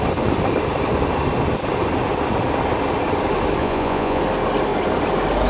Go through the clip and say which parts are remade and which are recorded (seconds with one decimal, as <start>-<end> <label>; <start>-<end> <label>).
0.0-3.6 recorded; 3.6-4.2 remade; 4.2-5.5 recorded